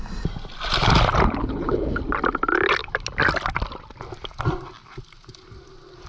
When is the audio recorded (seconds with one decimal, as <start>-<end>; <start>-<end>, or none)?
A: 0.0-1.4; 2.0-6.1